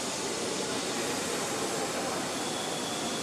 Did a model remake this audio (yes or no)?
no